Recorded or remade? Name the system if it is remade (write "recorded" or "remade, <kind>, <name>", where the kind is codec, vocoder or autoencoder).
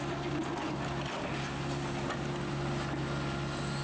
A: recorded